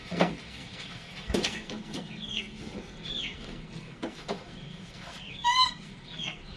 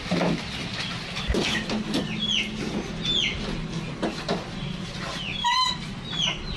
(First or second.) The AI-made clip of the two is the first